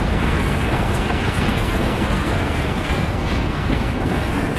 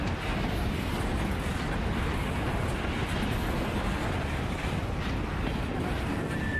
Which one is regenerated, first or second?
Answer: first